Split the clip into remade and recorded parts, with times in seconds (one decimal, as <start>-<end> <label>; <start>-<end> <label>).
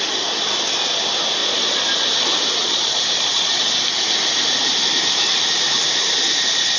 0.0-1.4 recorded; 1.4-1.9 remade; 1.9-2.6 recorded; 2.6-3.7 remade; 3.7-6.8 recorded